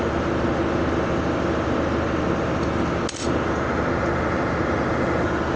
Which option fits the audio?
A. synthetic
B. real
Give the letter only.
B